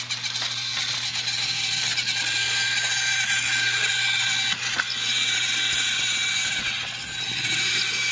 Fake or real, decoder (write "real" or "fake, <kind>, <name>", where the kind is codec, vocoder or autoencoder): real